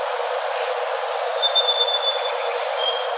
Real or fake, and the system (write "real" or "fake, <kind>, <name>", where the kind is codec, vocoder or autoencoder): real